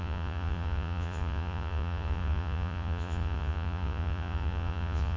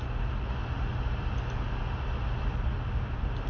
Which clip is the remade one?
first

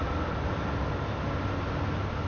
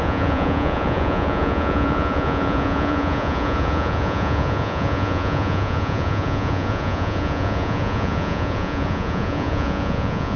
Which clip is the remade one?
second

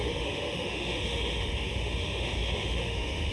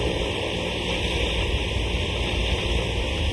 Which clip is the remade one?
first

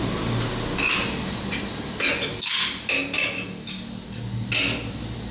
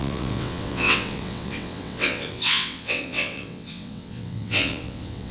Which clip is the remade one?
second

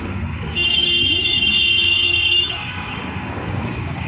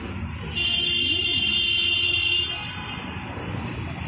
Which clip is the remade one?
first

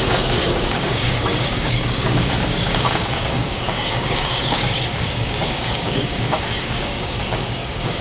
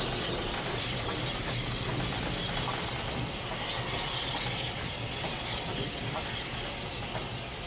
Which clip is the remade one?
first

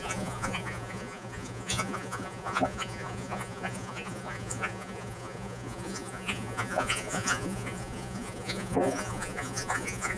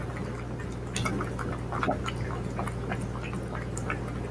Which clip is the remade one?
first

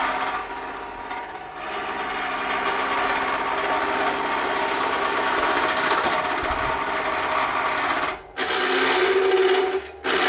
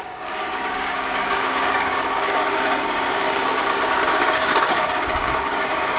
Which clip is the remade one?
second